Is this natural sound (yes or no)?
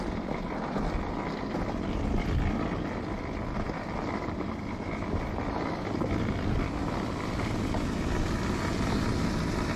yes